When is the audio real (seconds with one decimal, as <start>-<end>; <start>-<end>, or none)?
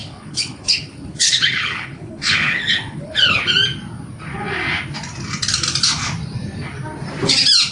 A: 3.4-7.7